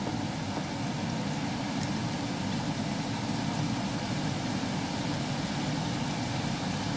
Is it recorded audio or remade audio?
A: recorded